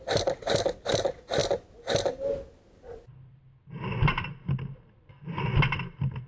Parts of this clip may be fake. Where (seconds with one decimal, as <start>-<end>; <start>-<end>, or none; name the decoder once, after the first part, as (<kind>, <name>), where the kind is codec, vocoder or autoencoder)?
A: none